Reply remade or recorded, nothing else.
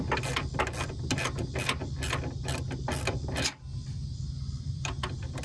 recorded